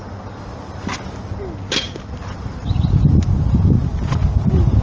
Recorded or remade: recorded